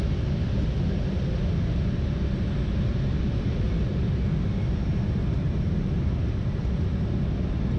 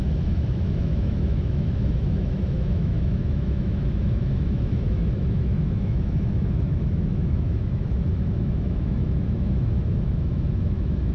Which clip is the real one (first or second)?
first